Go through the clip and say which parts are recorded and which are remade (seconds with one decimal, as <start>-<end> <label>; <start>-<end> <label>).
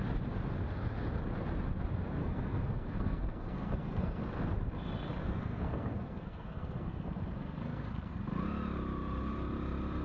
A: 0.0-2.2 recorded; 2.2-4.2 remade; 4.2-5.2 recorded; 5.2-8.1 remade; 8.1-10.0 recorded